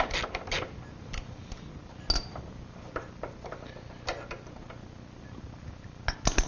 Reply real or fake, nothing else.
real